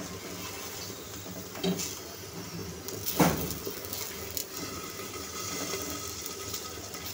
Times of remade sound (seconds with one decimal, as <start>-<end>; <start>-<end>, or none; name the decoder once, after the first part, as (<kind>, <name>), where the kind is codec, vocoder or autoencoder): 4.4-7.1 (vocoder, BigVGAN v2)

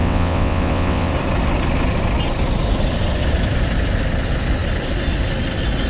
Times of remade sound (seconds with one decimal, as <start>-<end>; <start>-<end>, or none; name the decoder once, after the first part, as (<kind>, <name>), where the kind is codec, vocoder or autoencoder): 0.0-1.1 (vocoder, WaveNeXt)

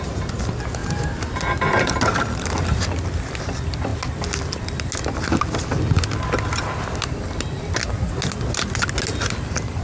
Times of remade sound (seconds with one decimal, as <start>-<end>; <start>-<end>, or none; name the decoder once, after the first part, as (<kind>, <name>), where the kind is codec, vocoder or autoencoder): none